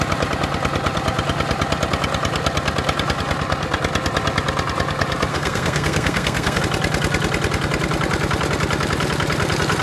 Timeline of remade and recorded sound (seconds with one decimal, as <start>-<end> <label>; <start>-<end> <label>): 0.0-5.3 recorded; 5.3-6.6 remade; 6.6-9.8 recorded